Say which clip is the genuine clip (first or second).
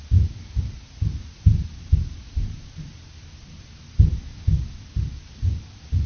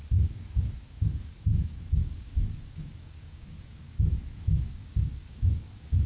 first